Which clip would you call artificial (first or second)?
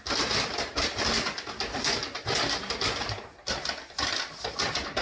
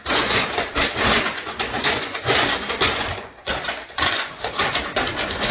second